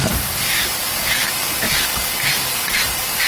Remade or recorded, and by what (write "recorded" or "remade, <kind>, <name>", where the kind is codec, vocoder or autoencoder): recorded